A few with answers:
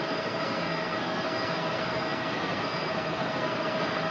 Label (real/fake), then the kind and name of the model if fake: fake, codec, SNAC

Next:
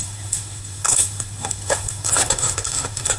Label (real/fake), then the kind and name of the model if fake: fake, codec, SNAC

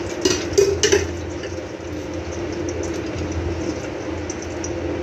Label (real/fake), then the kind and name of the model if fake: real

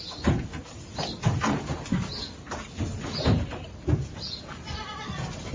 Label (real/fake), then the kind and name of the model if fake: real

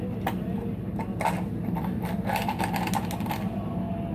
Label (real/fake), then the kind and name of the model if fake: real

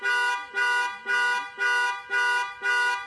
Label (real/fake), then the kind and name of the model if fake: real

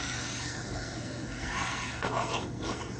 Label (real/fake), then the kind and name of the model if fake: fake, codec, SNAC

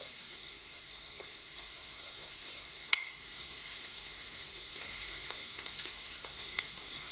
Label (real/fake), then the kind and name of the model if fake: fake, codec, SNAC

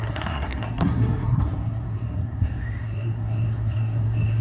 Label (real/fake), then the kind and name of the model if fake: fake, codec, SNAC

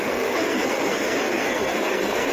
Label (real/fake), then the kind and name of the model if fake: fake, codec, SNAC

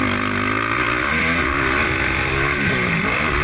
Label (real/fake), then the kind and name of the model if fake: real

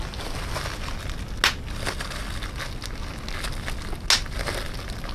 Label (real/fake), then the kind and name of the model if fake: real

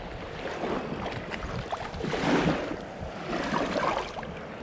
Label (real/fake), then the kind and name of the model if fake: real